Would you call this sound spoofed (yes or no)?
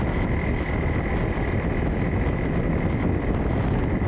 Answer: no